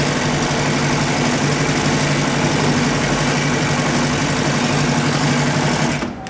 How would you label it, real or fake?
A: real